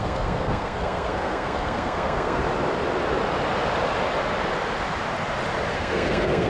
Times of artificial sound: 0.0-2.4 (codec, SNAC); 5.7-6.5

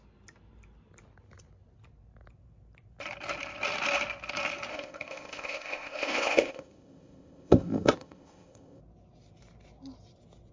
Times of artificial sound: 4.7-8.8 (codec, ZipCodec)

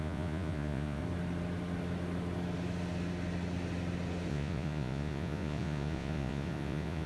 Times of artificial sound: 0.0-1.0 (vocoder, Vocos); 4.3-7.1

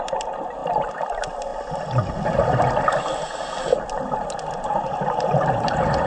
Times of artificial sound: none

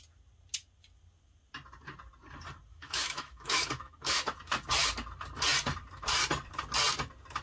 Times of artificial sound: 2.7-4.2 (autoencoder, DAC-VAE)

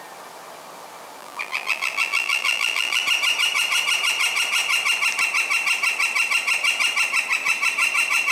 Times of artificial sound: 1.2-3.0 (vocoder, BigVGAN v2)

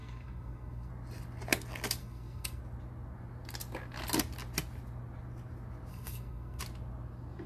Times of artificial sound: 0.0-0.9 (codec, SNAC); 2.0-2.6; 5.9-6.6

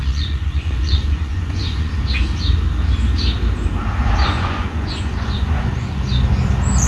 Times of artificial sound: 0.0-2.0 (vocoder, Vocos); 4.2-6.0